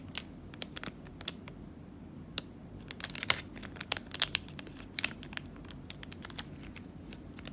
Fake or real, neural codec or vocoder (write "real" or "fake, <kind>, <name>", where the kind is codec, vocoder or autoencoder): fake, vocoder, BigVGAN v2